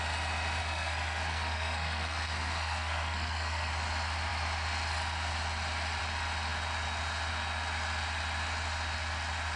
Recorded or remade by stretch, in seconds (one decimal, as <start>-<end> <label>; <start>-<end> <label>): 0.0-0.6 recorded; 0.6-3.7 remade; 3.7-9.6 recorded